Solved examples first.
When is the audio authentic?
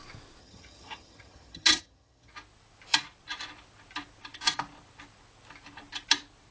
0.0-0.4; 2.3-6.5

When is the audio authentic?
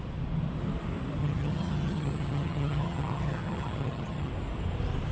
0.0-1.2; 4.3-5.1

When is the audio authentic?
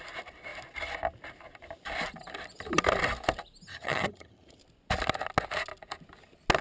0.0-3.7; 4.6-6.6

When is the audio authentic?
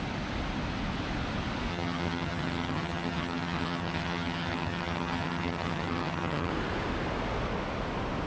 0.0-1.7; 6.5-8.3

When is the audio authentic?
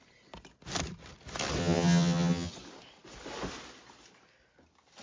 0.0-1.6; 2.5-5.0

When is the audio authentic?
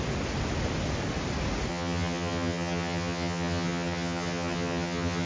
0.0-1.7